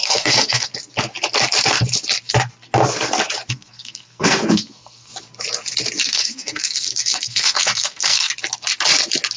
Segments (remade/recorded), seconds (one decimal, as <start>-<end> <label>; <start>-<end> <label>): 0.0-0.7 remade; 0.7-3.5 recorded; 3.5-5.1 remade; 5.1-6.0 recorded; 6.0-8.3 remade; 8.3-9.4 recorded